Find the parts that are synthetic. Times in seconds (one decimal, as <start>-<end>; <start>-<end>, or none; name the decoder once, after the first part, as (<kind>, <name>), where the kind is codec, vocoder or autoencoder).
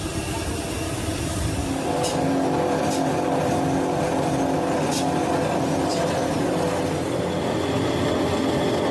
1.1-1.9 (vocoder, BigVGAN v2); 5.9-6.5